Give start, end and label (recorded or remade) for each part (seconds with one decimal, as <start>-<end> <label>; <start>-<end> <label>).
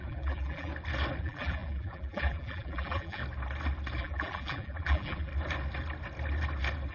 0.0-0.7 remade; 0.7-1.2 recorded; 1.2-3.2 remade; 3.2-4.0 recorded; 4.0-5.3 remade; 5.3-6.9 recorded